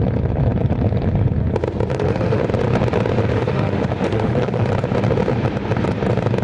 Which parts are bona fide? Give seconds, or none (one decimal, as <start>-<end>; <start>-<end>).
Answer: 0.0-1.9; 2.4-3.2; 4.7-6.4